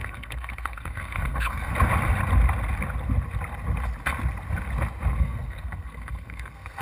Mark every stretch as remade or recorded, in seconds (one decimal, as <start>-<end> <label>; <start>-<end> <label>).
0.0-1.7 remade; 1.7-5.2 recorded; 5.2-6.8 remade